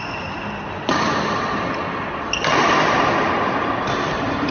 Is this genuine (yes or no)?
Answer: yes